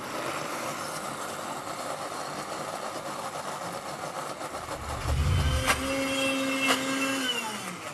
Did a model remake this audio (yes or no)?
no